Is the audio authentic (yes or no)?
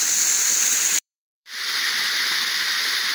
no